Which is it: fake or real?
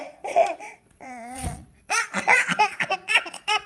fake